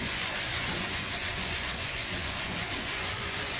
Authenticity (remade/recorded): remade